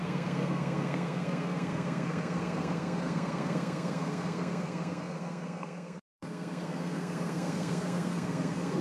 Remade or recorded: remade